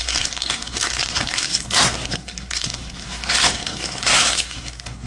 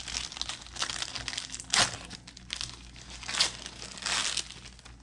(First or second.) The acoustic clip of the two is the second